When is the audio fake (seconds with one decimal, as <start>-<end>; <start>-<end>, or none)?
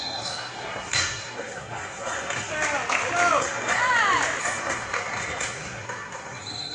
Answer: 0.0-2.5; 3.4-3.8; 4.4-6.7